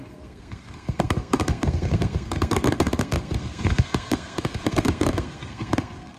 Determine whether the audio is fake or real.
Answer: fake